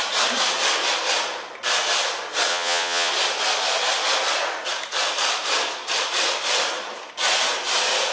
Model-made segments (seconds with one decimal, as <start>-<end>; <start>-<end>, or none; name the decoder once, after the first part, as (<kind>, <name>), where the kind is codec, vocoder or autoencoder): 2.5-3.1 (vocoder, Vocos)